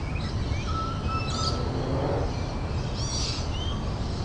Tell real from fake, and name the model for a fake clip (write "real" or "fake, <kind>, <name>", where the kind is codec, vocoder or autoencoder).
real